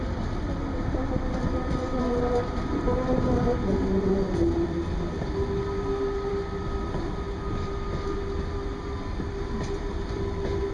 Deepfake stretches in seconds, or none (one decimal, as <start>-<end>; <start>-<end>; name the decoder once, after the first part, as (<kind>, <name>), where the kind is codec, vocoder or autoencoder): none